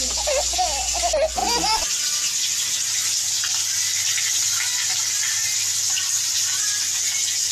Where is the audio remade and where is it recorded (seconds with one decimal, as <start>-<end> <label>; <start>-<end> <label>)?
0.0-7.5 recorded